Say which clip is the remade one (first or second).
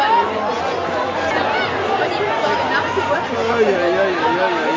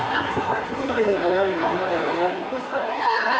second